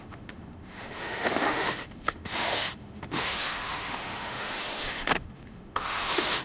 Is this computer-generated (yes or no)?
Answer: yes